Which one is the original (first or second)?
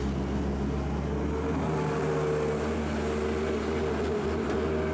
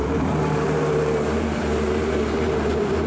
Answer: first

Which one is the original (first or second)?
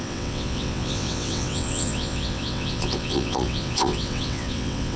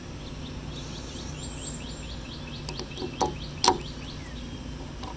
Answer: second